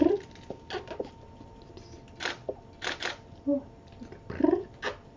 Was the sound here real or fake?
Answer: real